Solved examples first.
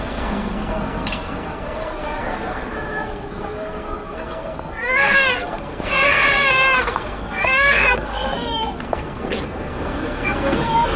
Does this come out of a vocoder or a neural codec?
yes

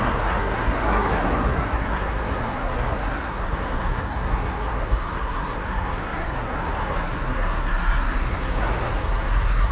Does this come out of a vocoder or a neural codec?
yes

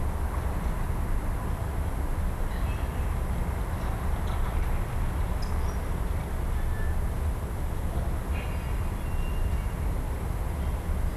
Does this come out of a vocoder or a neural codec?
no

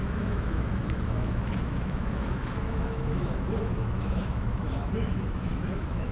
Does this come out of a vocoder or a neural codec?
yes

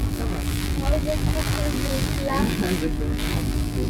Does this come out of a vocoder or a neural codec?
yes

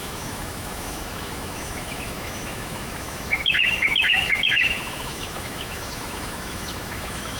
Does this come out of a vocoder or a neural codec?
yes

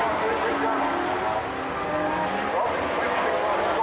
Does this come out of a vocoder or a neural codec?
no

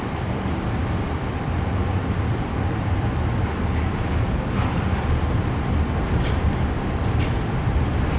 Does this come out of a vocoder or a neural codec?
no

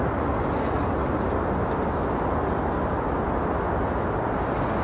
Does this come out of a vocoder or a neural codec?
no